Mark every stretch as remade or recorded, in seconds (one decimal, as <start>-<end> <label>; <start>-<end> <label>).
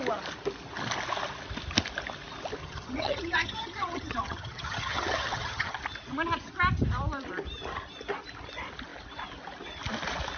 0.0-2.6 recorded; 2.6-5.8 remade; 5.8-10.4 recorded